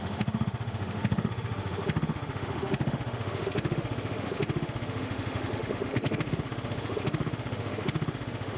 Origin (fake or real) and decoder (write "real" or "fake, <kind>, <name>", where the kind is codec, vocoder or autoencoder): fake, autoencoder, DAC-VAE